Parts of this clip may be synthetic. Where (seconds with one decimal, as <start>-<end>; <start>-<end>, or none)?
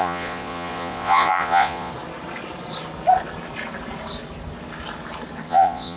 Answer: 0.0-1.9; 5.5-6.0